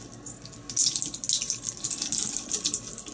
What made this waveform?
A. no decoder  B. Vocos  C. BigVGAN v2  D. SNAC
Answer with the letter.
A